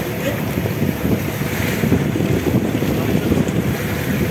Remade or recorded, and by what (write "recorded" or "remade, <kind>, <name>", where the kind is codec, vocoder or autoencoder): recorded